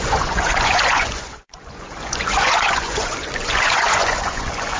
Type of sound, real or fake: fake